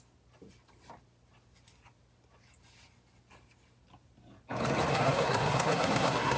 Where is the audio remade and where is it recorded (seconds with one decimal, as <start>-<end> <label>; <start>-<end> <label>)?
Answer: 0.0-4.9 recorded; 4.9-6.4 remade